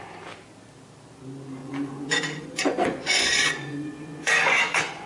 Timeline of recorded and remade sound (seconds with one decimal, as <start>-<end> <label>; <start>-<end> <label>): 0.0-1.6 recorded; 1.6-5.1 remade